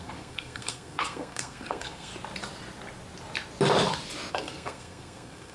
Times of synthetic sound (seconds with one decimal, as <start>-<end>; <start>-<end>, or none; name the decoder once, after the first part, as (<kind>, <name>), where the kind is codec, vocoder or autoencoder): 0.0-2.1 (codec, SNAC); 4.3-5.5

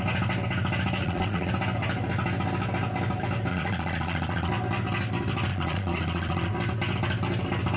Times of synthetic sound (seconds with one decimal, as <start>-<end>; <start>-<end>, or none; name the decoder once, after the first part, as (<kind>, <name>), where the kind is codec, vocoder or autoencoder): 1.0-1.5 (vocoder, Vocos); 3.5-4.5; 5.5-6.5

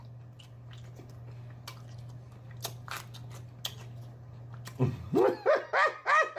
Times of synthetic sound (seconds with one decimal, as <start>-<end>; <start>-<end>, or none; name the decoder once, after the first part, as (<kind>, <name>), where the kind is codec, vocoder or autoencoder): none

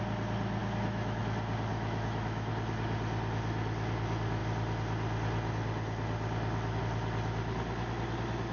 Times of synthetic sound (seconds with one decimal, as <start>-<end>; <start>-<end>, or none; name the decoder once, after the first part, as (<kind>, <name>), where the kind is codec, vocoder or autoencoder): 0.6-1.2 (autoencoder, DAC-VAE); 1.7-2.5

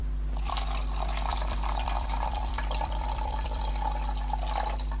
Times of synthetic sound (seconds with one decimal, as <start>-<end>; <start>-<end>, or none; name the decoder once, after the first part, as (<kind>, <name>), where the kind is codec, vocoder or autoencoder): 1.3-3.7 (vocoder, BigVGAN v2)

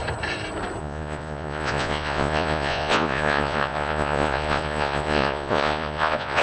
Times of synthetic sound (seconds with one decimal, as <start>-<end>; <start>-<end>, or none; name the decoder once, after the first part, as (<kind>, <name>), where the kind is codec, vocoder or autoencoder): 0.8-6.4 (vocoder, Vocos)

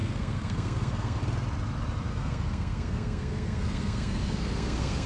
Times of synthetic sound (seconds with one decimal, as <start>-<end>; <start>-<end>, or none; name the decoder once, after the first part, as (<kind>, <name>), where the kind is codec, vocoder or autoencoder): 0.0-1.2 (codec, SNAC); 2.1-5.1